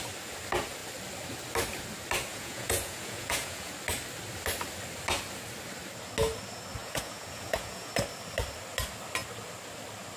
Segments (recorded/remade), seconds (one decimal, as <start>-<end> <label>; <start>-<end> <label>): 0.0-2.3 recorded; 2.3-3.7 remade; 3.7-6.8 recorded; 6.8-7.9 remade; 7.9-10.2 recorded